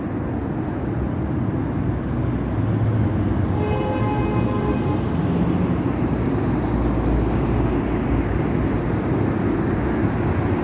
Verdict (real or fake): real